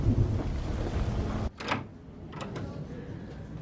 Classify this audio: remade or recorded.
recorded